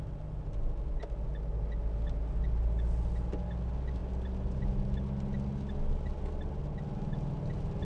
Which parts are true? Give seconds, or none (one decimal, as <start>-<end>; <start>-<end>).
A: 0.0-7.8